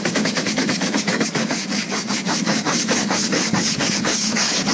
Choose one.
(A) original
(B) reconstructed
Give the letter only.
B